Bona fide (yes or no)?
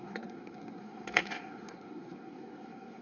no